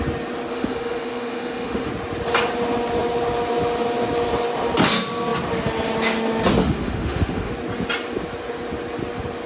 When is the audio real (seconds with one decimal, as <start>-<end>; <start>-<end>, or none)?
0.0-0.5; 1.9-6.6; 7.5-9.5